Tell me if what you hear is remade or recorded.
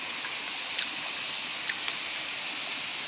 recorded